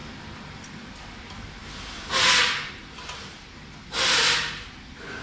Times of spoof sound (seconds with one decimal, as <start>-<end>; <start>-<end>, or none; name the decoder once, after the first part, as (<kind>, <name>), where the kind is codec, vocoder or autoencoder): 2.7-5.2 (vocoder, BigVGAN v2)

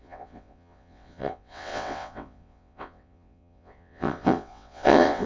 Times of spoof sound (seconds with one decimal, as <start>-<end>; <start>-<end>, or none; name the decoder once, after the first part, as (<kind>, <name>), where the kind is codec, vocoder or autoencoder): 0.0-5.3 (vocoder, WaveNeXt)

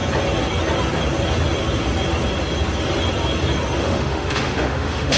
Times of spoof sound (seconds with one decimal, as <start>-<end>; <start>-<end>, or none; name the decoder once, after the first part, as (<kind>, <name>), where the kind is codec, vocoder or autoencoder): 3.8-5.2 (autoencoder, DAC-VAE)

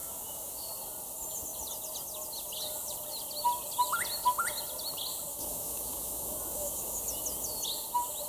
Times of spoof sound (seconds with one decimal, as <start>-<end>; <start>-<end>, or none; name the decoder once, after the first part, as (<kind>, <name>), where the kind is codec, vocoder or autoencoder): 0.0-0.7 (autoencoder, DAC-VAE); 5.3-7.0

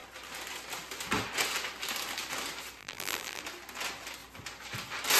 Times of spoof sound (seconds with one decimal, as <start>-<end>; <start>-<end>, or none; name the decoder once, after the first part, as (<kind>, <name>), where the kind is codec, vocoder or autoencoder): 2.8-3.4 (vocoder, BigVGAN v2)

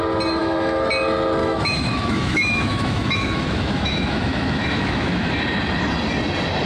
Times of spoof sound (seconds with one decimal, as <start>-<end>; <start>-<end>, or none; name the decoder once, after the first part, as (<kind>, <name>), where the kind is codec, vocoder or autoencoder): 0.4-0.9 (autoencoder, DAC-VAE); 1.4-5.3